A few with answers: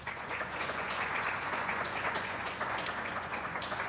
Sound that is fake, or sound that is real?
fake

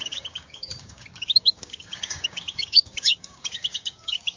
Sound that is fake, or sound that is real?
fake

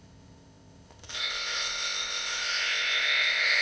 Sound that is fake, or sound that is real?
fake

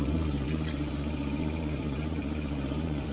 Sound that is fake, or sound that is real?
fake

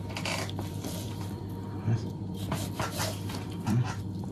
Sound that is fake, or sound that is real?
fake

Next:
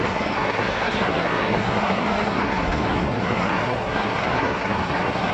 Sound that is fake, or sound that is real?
fake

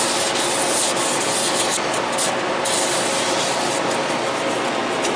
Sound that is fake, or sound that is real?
real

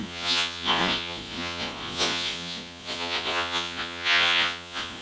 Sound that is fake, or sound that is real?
fake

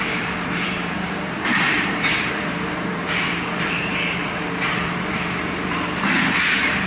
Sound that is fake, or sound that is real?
fake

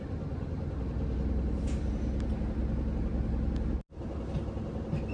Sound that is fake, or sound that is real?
real